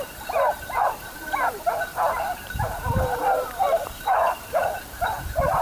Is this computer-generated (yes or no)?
yes